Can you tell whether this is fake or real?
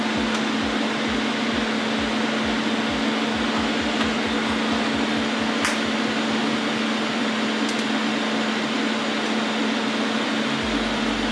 real